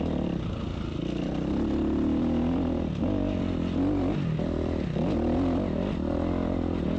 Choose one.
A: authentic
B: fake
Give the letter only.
A